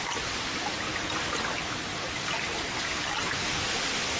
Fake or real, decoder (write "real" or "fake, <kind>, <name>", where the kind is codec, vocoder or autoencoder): real